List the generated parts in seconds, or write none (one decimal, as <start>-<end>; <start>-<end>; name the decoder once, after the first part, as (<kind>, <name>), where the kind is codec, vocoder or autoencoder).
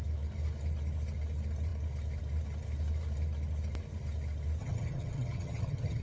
4.6-6.0 (vocoder, HiFi-GAN)